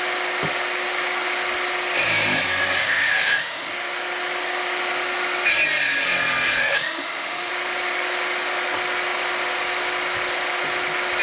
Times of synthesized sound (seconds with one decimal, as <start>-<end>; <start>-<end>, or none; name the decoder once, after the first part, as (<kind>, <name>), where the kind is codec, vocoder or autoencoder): 2.8-3.7 (autoencoder, DAC-VAE); 6.6-7.5